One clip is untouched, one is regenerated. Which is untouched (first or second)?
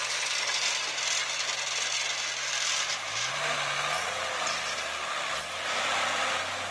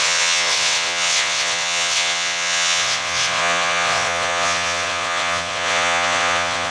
first